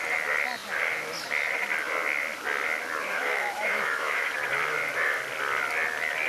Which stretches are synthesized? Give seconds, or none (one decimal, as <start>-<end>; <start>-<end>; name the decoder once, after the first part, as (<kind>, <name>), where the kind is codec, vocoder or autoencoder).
3.1-4.3 (autoencoder, DAC-VAE)

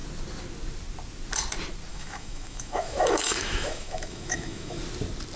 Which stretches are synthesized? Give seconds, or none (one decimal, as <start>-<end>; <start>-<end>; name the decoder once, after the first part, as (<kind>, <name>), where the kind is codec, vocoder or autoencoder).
1.9-4.8 (autoencoder, DAC-VAE)